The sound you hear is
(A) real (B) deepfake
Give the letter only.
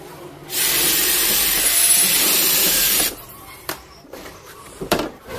B